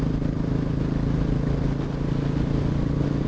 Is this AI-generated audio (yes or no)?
no